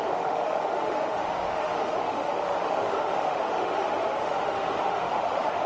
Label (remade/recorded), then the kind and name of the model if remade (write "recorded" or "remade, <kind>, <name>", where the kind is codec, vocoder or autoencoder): remade, autoencoder, DAC-VAE